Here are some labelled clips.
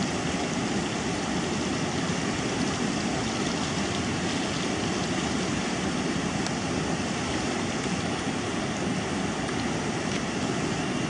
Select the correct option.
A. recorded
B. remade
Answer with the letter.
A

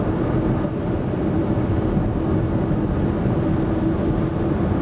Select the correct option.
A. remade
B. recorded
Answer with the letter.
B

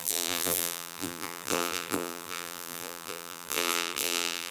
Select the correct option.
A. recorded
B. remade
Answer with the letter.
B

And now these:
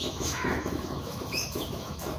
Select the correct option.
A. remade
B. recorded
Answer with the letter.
A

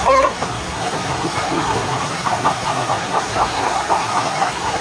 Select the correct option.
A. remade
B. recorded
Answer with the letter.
A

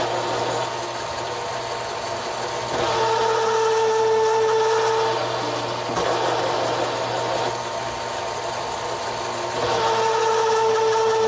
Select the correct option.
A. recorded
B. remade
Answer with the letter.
A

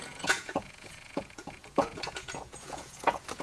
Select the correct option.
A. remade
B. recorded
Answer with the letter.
A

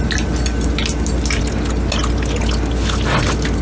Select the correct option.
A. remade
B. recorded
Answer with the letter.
B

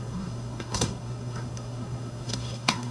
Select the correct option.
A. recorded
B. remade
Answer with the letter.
B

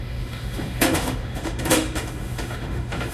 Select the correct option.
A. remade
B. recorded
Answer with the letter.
A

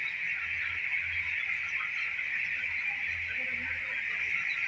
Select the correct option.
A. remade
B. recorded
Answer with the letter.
B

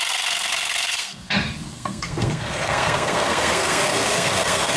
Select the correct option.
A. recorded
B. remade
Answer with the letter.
B